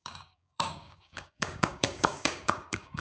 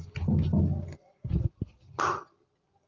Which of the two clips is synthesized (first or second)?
first